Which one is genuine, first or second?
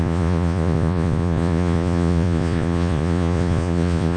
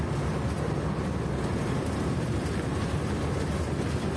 second